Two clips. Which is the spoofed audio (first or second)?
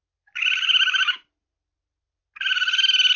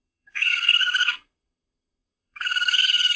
second